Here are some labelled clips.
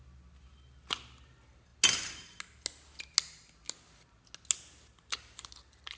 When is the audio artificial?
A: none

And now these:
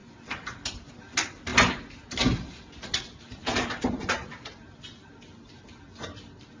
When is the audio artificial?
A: none

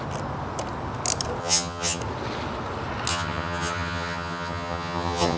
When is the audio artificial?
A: 1.4-2.0 (vocoder, HiFi-GAN); 3.1-5.4

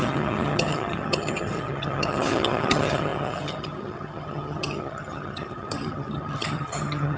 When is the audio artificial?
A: 0.0-7.2 (vocoder, HiFi-GAN)

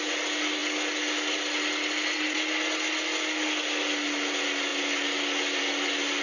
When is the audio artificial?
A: none

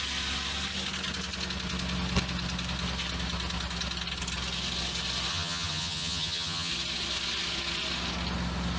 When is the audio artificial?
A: 5.3-6.7 (vocoder, HiFi-GAN)